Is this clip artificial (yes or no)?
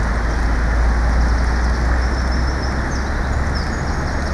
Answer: no